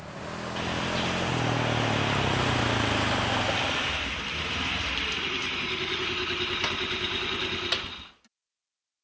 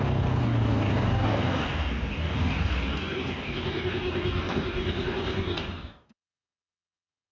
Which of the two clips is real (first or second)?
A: first